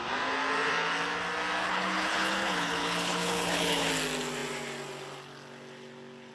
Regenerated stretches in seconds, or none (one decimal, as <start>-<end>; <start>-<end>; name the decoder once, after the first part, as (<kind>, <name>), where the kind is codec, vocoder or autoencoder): 1.6-3.9 (codec, HILCodec)